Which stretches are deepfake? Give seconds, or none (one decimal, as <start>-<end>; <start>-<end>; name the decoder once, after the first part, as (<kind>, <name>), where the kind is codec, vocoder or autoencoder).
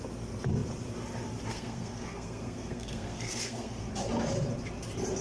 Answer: 1.5-3.9 (codec, SNAC)